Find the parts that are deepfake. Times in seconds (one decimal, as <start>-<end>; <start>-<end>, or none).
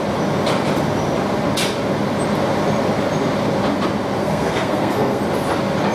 4.2-5.2